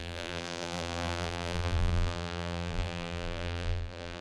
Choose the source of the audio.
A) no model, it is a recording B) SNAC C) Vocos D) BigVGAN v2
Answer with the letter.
D